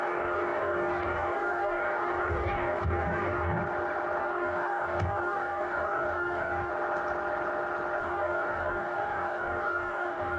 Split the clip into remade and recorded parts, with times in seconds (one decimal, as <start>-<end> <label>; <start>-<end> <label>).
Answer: 0.0-3.6 remade; 3.6-4.2 recorded; 4.2-6.7 remade; 6.7-8.0 recorded; 8.0-10.4 remade